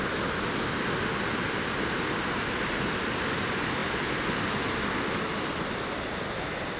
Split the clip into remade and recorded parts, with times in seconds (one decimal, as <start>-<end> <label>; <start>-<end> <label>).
0.0-6.8 recorded